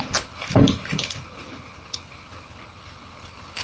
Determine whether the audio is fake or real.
fake